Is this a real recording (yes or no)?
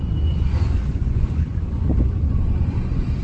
no